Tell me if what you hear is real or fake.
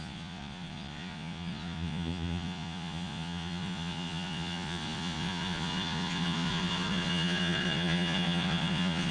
fake